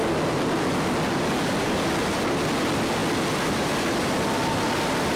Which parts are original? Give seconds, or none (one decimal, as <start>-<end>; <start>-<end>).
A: 0.0-5.2

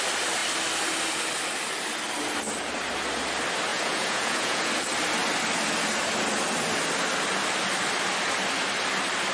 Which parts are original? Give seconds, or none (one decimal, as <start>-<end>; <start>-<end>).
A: 0.0-3.7; 4.7-9.3

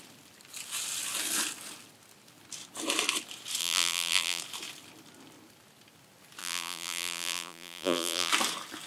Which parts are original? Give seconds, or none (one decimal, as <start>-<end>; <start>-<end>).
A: 0.0-3.6; 4.4-6.4; 8.3-8.9

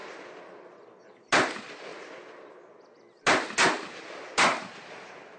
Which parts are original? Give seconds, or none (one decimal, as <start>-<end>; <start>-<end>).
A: 0.0-5.4